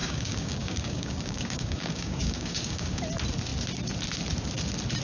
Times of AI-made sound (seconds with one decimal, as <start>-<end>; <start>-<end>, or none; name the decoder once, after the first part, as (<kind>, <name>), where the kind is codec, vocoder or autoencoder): 0.0-3.0 (codec, DAC)

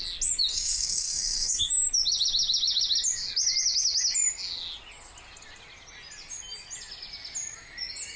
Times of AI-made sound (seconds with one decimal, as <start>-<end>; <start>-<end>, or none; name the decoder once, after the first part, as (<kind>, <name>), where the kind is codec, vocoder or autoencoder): 0.5-1.7 (codec, SNAC)

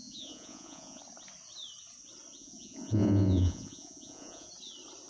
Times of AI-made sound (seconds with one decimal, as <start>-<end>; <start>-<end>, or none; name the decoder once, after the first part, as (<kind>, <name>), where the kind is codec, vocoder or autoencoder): 0.0-1.0 (vocoder, Vocos); 2.4-4.5

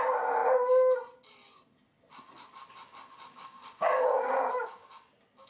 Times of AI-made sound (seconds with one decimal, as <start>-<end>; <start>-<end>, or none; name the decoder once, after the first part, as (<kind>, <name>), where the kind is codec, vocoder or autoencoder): 3.3-4.5 (codec, DAC)

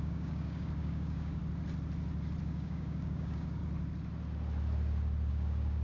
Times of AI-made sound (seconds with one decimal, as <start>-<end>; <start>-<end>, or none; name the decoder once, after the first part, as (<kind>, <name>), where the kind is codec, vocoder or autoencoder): 0.0-1.4 (codec, DAC); 2.4-3.6; 5.3-5.8

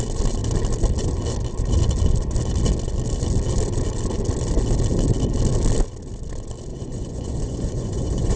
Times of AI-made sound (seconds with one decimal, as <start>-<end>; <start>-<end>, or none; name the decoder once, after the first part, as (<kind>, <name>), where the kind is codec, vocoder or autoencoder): 6.7-8.4 (vocoder, Vocos)

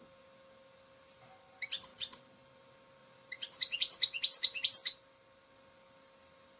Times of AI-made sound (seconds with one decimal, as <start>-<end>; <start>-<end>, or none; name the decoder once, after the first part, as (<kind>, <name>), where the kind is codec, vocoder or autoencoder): 1.9-2.6 (vocoder, BigVGAN v2); 3.0-3.6

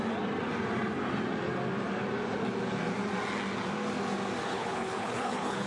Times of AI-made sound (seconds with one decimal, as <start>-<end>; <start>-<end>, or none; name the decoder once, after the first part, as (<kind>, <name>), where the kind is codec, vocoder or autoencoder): 4.5-5.7 (codec, HILCodec)